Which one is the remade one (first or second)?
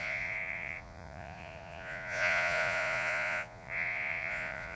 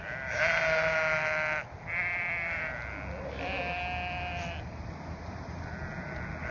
first